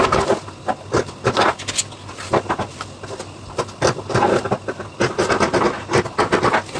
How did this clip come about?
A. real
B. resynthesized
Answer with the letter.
A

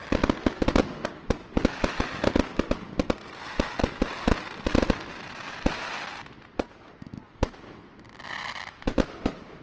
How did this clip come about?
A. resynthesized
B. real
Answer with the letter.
B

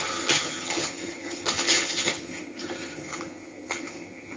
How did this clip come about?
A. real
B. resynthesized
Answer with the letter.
B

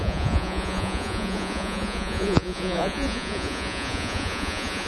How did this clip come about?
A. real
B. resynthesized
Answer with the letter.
B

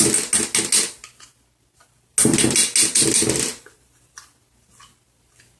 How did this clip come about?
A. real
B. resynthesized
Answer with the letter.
A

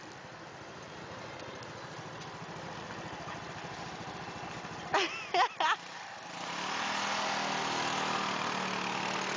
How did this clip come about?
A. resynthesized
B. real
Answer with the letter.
B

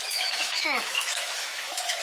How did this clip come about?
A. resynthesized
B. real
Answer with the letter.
A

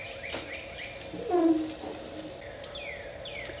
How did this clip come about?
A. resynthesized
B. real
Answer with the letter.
B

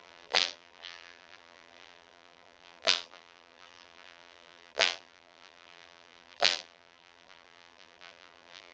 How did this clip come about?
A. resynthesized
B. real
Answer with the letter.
A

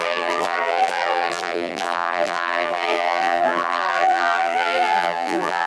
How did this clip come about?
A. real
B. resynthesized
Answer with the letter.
B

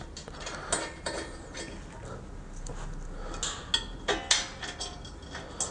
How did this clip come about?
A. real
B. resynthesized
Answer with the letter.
A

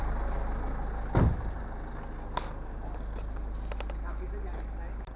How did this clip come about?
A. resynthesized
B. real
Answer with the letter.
B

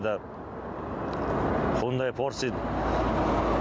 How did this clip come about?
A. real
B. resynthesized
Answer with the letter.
A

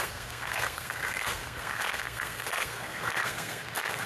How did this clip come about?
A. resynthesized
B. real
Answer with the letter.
A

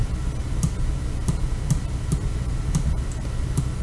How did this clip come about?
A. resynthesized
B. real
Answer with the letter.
B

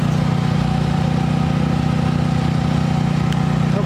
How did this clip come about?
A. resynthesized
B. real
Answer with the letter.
B